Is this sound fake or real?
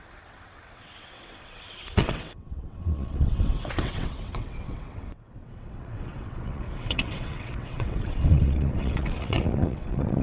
fake